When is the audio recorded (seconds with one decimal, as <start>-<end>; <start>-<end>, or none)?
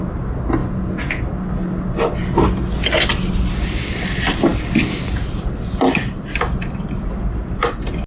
0.0-0.6; 1.2-8.1